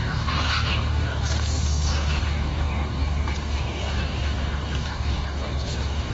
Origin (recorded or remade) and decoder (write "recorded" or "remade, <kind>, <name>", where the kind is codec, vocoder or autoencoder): remade, codec, DAC